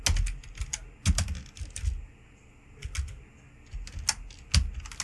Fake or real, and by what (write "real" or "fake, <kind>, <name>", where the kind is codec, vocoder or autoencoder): real